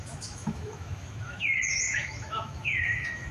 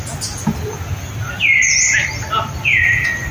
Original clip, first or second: second